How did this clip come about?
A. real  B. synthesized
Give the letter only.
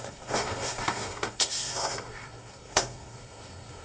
B